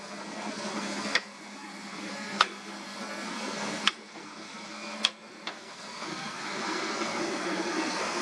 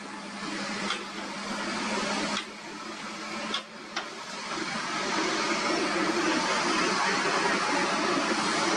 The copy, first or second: first